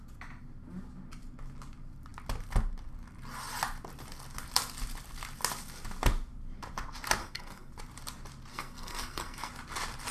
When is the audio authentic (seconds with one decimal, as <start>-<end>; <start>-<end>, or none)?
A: 0.0-7.2; 7.7-8.5; 9.5-10.1